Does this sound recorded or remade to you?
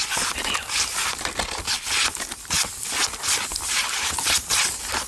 recorded